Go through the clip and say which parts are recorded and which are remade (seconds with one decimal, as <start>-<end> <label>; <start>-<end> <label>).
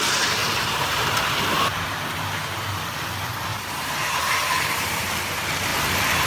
0.0-0.4 recorded; 0.4-1.2 remade; 1.2-3.5 recorded; 3.5-5.1 remade; 5.1-5.7 recorded; 5.7-6.3 remade